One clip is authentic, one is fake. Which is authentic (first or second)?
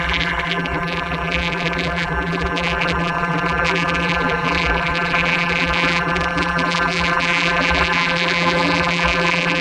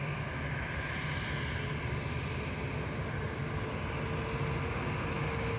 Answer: second